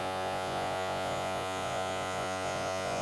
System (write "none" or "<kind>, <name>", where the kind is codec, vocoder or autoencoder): vocoder, Vocos